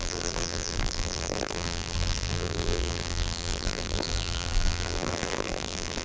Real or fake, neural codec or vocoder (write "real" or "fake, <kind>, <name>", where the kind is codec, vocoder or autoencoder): fake, vocoder, BigVGAN v2